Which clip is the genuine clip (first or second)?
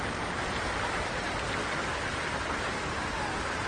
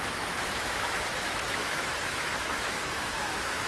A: first